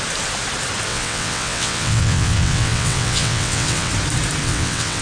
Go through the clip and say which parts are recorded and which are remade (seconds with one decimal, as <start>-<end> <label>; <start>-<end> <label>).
0.0-0.9 recorded; 0.9-3.9 remade; 3.9-4.4 recorded; 4.4-5.0 remade